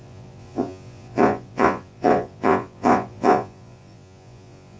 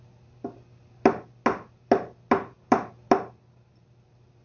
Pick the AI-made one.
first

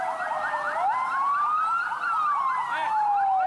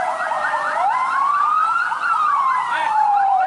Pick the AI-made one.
second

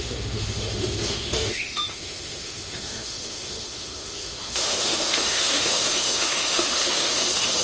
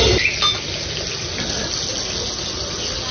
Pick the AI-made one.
first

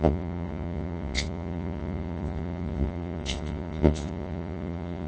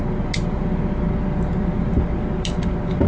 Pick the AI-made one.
first